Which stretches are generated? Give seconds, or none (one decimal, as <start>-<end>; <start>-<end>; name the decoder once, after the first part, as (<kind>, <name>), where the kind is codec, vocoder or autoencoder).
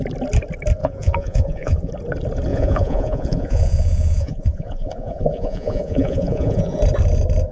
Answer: 0.8-1.9 (vocoder, Vocos); 2.5-6.8